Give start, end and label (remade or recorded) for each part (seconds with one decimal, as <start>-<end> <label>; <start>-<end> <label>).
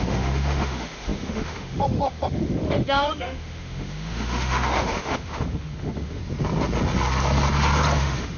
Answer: 0.0-6.2 remade; 6.2-8.0 recorded; 8.0-8.4 remade